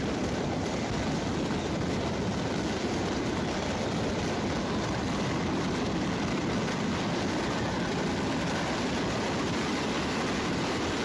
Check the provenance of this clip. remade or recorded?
recorded